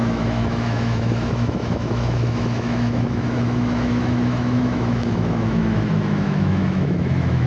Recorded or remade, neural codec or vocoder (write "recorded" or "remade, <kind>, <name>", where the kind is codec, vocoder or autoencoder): remade, autoencoder, DAC-VAE